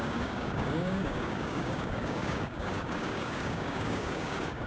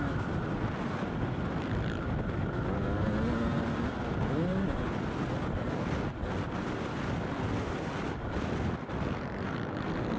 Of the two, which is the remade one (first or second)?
first